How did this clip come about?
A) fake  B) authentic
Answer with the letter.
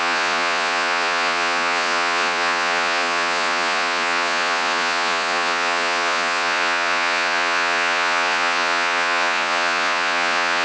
A